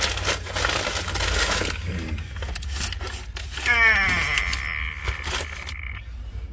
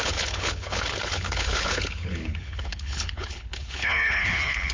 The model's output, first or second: second